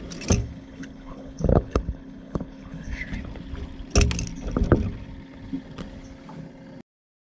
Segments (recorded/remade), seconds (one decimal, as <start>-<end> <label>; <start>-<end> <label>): 0.0-0.4 recorded; 0.4-3.0 remade; 3.0-7.2 recorded